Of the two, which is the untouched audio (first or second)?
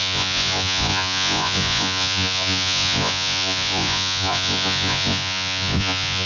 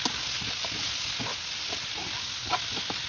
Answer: second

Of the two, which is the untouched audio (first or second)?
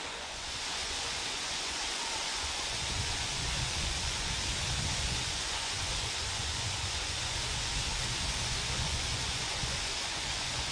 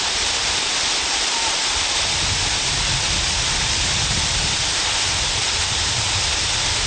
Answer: second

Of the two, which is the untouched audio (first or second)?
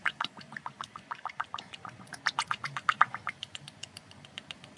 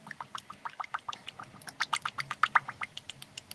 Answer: second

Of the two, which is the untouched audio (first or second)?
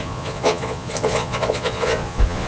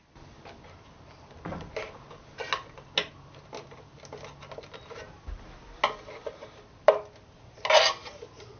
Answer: second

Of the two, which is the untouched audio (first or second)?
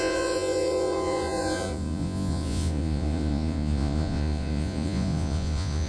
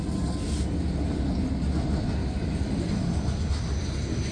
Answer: second